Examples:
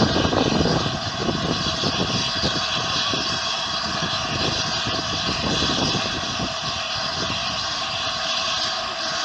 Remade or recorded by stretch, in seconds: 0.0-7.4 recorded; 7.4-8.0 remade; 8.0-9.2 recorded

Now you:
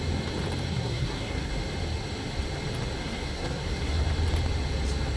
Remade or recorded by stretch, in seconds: 0.0-0.7 recorded; 0.7-1.5 remade; 1.5-3.0 recorded; 3.0-4.0 remade; 4.0-5.2 recorded

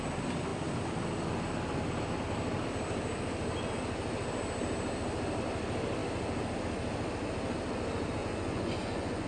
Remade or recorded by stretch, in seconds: 0.0-8.2 recorded; 8.2-9.3 remade

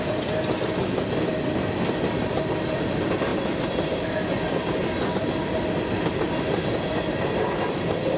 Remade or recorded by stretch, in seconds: 0.0-8.2 recorded